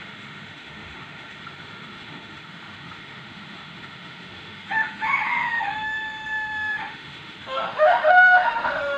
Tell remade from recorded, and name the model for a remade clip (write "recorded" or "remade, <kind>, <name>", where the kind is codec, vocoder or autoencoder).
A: remade, autoencoder, DAC-VAE